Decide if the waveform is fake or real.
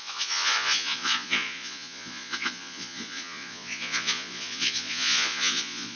fake